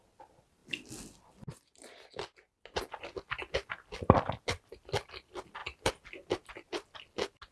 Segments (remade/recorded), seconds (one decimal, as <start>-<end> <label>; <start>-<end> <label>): 0.0-7.5 recorded